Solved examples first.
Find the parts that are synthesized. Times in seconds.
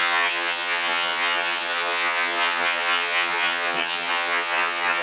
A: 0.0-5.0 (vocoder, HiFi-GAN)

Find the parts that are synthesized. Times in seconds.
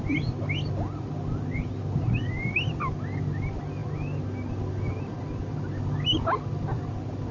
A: none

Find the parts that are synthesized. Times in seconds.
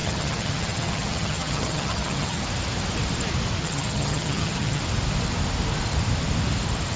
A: 0.0-2.4 (vocoder, HiFi-GAN); 3.6-4.8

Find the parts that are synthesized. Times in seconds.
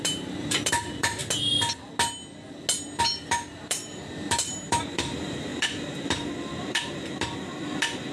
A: 0.0-1.2 (vocoder, BigVGAN v2); 3.0-8.1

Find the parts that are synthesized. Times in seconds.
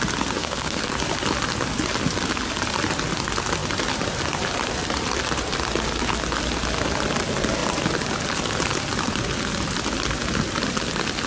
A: 0.4-0.9 (codec, SNAC)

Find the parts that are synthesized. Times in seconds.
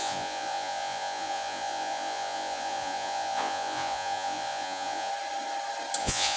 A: 0.0-5.1 (vocoder, Vocos); 6.0-6.4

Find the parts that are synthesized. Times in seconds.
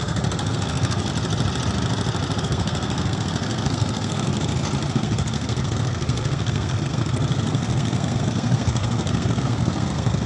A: 0.0-1.1 (codec, SNAC); 2.4-4.3; 4.9-10.3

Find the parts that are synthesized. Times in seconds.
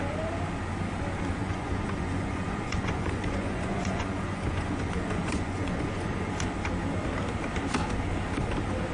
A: 1.4-6.3 (vocoder, Vocos)